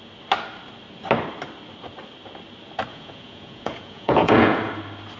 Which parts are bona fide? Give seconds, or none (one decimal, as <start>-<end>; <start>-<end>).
0.0-2.9; 4.7-5.2